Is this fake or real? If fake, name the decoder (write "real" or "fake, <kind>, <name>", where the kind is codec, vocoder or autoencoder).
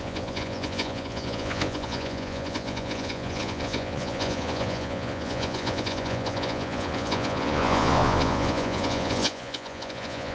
fake, vocoder, Vocos